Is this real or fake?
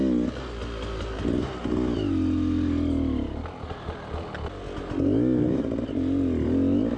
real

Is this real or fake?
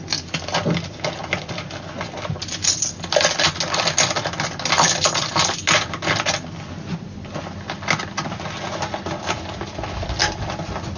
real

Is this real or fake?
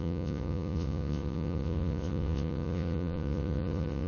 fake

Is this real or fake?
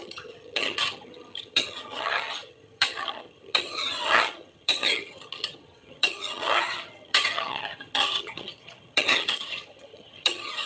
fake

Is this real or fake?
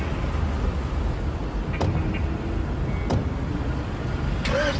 real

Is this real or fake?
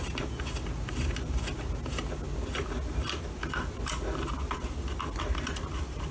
real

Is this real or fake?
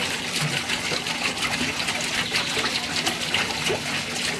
real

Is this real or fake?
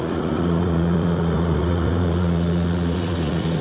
fake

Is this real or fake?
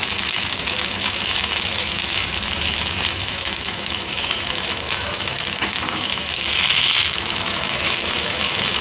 fake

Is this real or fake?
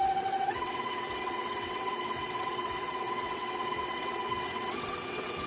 fake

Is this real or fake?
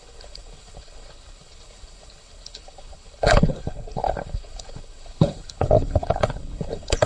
fake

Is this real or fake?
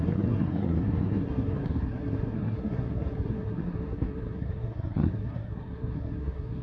fake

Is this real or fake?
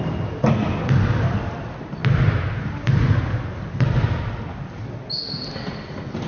real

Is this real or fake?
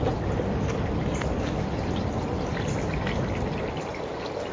real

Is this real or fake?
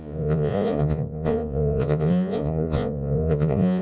fake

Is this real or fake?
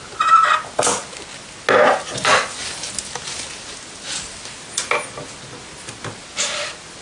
real